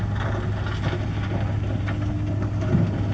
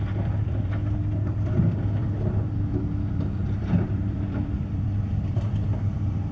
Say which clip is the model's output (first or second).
second